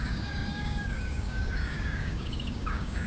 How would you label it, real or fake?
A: fake